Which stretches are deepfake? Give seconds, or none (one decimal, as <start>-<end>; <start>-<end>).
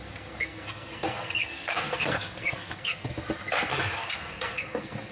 0.0-3.1; 3.6-5.1